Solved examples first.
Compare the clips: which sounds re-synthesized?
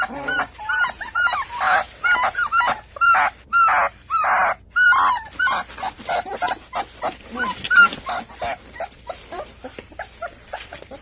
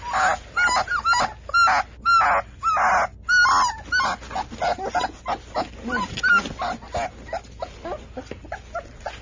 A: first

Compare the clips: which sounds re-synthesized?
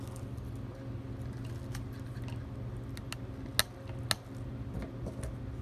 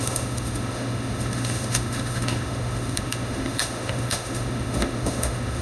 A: second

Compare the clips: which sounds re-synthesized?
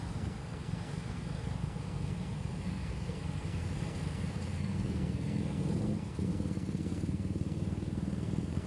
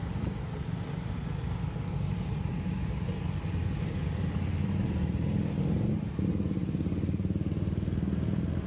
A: first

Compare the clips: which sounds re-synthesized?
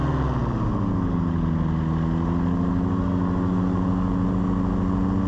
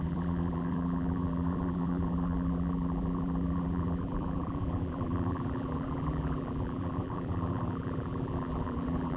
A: second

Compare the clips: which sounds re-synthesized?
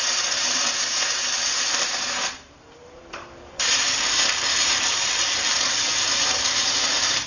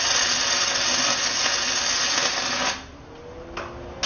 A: first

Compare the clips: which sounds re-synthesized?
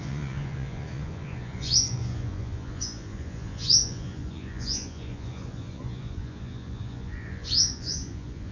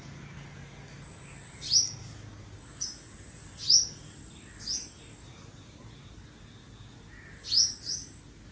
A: first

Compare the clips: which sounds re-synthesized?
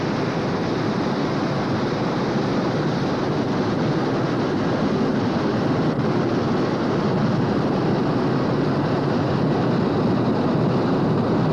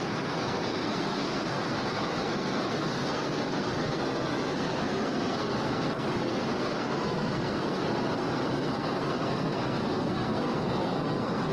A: second